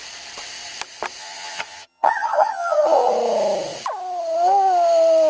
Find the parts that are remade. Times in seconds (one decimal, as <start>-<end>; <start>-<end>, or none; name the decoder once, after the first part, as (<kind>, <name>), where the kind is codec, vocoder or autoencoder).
1.2-3.1 (vocoder, HiFi-GAN)